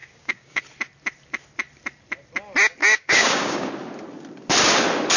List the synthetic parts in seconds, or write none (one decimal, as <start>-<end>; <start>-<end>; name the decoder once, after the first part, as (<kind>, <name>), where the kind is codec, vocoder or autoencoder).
0.0-0.6 (codec, DAC); 2.8-3.7